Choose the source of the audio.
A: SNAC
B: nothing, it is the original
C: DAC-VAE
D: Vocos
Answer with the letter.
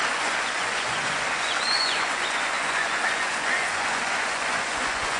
D